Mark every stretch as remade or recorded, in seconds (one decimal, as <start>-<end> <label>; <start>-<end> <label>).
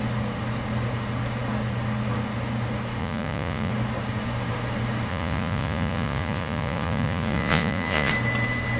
0.0-3.0 recorded; 3.0-3.7 remade; 3.7-5.1 recorded; 5.1-8.1 remade; 8.1-8.8 recorded